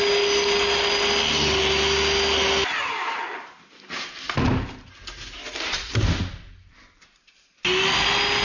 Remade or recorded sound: recorded